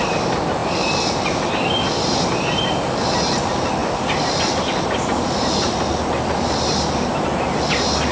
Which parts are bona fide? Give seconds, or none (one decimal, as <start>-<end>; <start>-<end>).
0.0-8.1